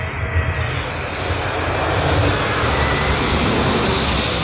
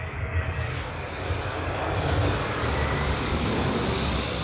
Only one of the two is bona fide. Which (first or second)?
first